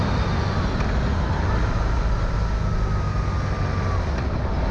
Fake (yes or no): no